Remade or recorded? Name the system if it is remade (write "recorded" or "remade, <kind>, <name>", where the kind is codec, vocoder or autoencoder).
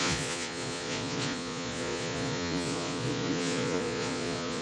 remade, vocoder, Vocos